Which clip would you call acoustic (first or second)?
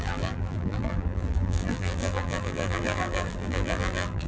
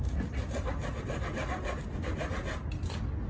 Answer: second